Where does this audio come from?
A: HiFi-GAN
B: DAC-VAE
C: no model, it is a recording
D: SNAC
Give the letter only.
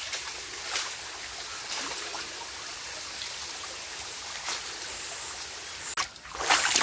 C